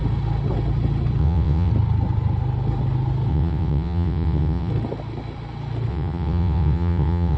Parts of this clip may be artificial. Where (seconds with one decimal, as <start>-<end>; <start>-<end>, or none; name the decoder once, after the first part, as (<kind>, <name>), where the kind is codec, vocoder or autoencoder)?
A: 1.2-1.7 (vocoder, WaveNeXt); 3.3-4.7; 5.9-7.4

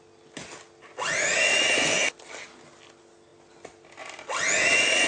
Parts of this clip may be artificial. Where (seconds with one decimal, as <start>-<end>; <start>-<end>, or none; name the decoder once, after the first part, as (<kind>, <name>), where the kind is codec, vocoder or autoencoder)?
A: none